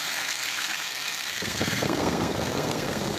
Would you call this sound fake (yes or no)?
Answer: yes